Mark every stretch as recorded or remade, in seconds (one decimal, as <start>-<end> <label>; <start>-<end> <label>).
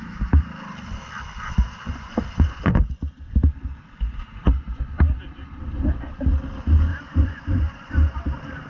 0.0-1.8 recorded; 1.8-2.9 remade; 2.9-6.9 recorded; 6.9-8.1 remade; 8.1-8.7 recorded